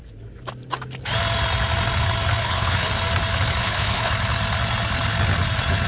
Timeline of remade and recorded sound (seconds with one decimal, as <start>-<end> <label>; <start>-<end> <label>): 0.0-2.4 recorded; 2.4-2.9 remade; 2.9-3.6 recorded; 3.6-4.1 remade; 4.1-5.9 recorded